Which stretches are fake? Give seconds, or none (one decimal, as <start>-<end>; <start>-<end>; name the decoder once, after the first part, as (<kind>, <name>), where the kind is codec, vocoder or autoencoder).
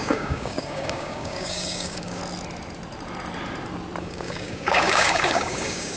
0.0-2.2 (codec, DAC); 4.0-6.0